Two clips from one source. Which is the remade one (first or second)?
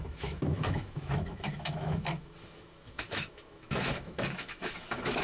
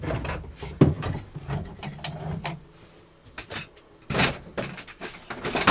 first